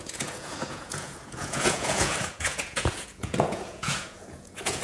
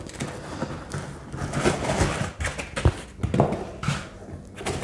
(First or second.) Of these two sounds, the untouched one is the second